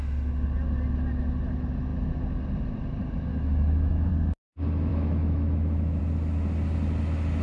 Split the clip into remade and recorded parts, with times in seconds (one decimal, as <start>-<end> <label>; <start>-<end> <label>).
0.0-3.3 recorded; 3.3-4.1 remade; 4.1-4.9 recorded; 4.9-6.0 remade; 6.0-7.4 recorded